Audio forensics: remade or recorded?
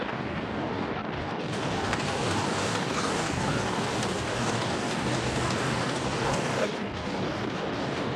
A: remade